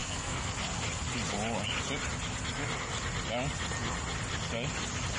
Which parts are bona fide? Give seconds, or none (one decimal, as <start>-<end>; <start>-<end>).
0.5-5.2